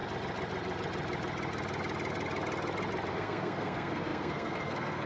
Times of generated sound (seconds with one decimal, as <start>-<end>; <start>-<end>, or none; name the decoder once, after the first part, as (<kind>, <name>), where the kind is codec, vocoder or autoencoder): 3.1-5.1 (codec, SNAC)